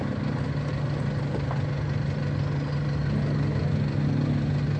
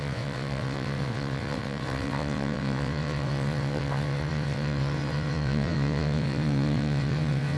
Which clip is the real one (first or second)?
first